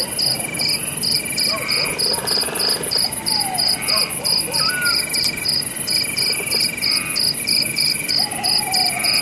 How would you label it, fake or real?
real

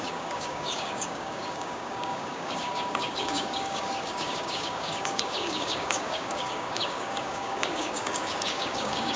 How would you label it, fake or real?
fake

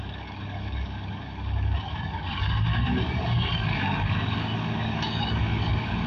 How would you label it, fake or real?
fake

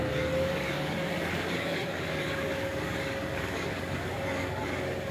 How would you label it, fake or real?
fake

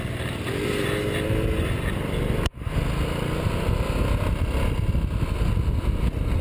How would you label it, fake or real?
real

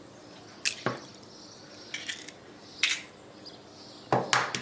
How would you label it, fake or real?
real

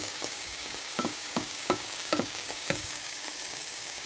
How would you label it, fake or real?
fake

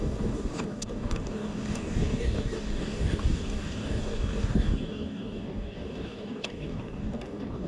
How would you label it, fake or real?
fake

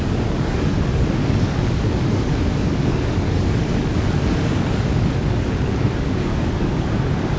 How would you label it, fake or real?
fake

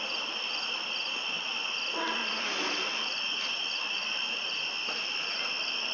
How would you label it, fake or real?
real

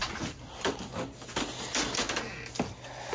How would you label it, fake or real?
real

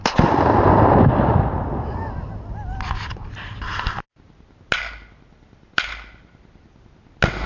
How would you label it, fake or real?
real